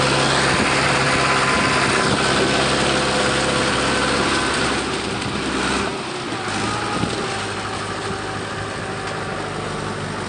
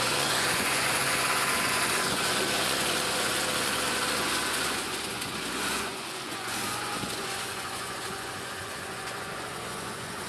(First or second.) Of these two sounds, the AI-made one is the second